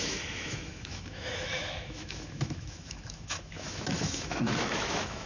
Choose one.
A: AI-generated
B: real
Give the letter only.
A